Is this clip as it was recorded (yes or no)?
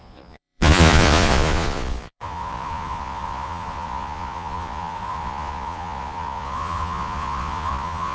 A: no